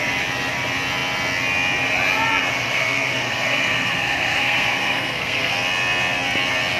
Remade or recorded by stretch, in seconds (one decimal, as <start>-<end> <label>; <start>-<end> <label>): 0.0-2.5 recorded; 2.5-5.5 remade; 5.5-6.8 recorded